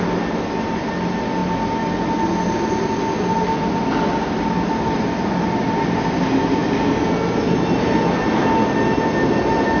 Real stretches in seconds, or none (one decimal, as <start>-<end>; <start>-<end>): 0.0-9.8